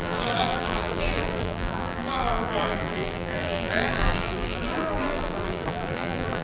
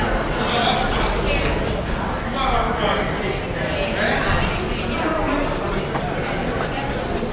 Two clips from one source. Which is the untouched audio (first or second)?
second